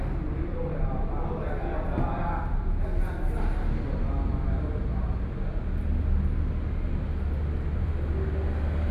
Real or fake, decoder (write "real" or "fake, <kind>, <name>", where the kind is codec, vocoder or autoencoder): real